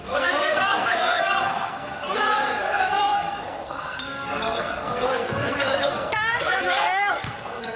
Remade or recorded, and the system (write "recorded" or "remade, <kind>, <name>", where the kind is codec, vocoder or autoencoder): remade, codec, SNAC